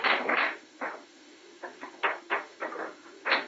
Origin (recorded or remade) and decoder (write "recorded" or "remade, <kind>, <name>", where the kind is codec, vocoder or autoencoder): remade, autoencoder, DAC-VAE